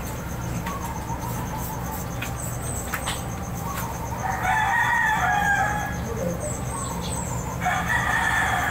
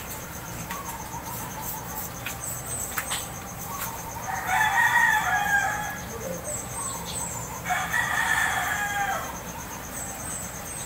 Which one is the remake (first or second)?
second